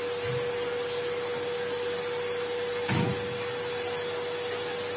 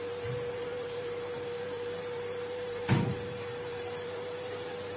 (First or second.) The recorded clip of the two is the first